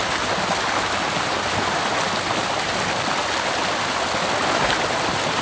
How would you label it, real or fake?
real